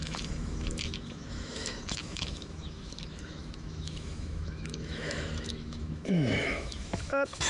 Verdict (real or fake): fake